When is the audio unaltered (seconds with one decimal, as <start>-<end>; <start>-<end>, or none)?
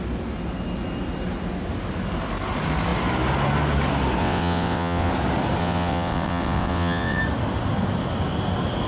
0.0-4.2; 5.1-5.6; 7.2-8.9